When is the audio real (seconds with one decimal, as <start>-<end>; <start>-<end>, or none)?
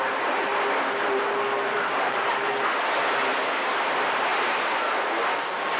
0.0-5.8